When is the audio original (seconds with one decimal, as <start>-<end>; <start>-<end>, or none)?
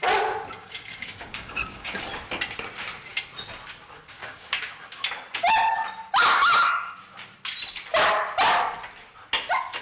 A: 0.0-0.6; 2.0-4.2; 4.7-6.2; 7.0-9.8